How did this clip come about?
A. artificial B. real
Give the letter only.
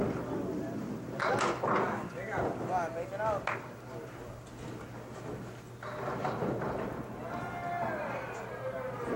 B